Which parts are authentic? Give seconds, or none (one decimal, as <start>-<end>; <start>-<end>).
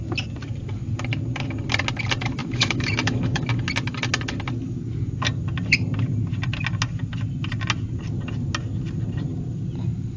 0.0-2.4; 3.4-10.2